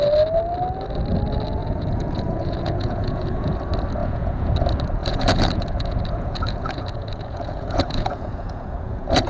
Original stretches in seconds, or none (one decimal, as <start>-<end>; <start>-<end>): 0.0-1.6; 3.5-4.0; 4.5-5.0